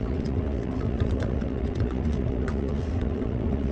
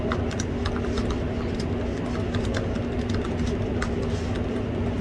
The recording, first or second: second